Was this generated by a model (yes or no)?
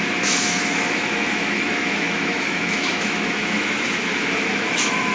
yes